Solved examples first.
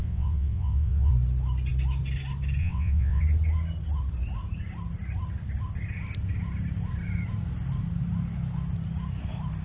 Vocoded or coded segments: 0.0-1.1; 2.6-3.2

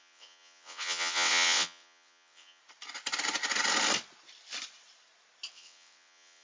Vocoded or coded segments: 0.0-2.6; 5.5-6.4

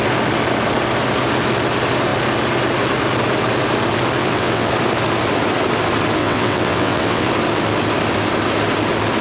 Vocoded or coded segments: 4.2-4.7; 6.2-7.3

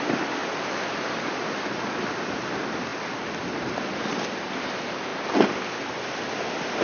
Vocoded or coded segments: none

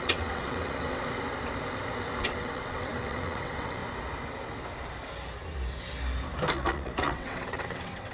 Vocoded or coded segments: 0.0-1.0; 2.2-3.8; 6.5-8.1

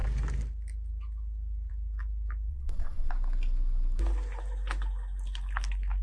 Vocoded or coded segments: 2.5-3.1

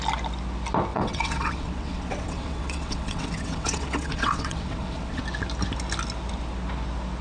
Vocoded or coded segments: 0.9-5.2

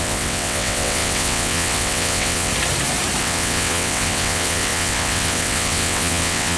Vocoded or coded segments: 0.0-2.5; 3.2-6.6